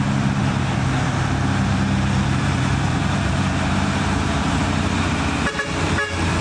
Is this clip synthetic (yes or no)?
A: yes